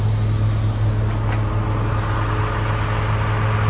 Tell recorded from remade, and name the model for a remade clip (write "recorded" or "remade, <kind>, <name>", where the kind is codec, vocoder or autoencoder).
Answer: recorded